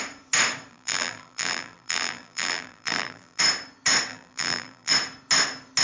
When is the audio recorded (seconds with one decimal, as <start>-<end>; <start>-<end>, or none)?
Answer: 0.0-0.7; 3.4-4.1; 4.9-5.8